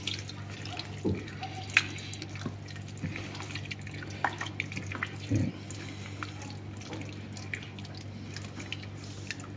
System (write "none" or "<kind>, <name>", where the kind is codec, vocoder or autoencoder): none